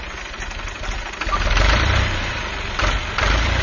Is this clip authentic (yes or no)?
no